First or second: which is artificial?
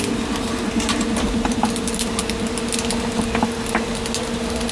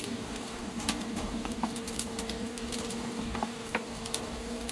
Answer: second